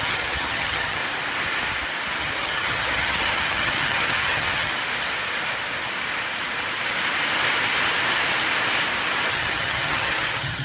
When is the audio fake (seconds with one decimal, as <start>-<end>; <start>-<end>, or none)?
0.0-1.0; 2.2-4.7; 9.3-10.6